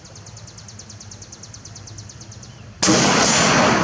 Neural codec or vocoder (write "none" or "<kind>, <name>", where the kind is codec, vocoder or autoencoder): none